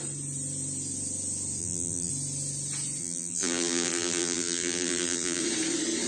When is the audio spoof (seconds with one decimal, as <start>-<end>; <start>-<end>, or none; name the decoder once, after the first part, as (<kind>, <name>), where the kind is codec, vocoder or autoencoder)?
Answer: 1.6-2.1 (vocoder, BigVGAN v2); 3.0-5.4